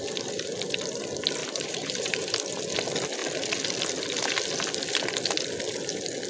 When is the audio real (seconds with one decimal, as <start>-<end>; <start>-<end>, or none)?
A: 0.0-1.4; 2.6-6.3